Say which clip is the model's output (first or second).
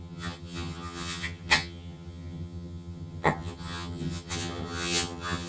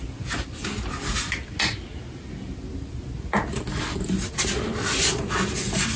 first